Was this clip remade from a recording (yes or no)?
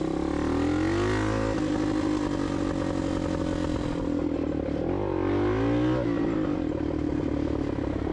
no